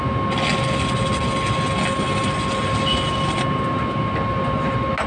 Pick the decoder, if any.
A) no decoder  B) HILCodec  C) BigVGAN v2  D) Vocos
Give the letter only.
A